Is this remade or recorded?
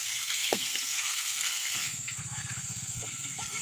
remade